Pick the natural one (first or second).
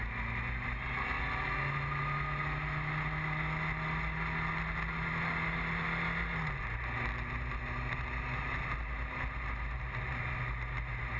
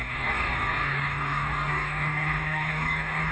first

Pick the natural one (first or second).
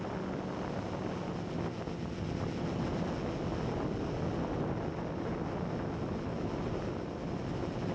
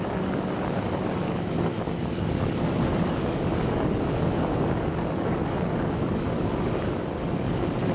first